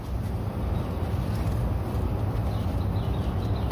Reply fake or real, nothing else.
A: real